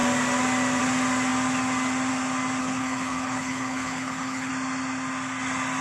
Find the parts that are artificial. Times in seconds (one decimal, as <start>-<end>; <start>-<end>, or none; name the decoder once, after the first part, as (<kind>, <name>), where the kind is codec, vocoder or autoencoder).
2.6-4.5 (codec, HILCodec)